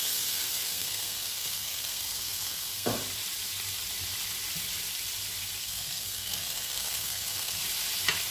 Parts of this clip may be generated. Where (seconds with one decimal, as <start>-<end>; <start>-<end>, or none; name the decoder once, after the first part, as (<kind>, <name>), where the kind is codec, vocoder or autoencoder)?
0.0-2.9 (codec, SNAC); 5.6-7.6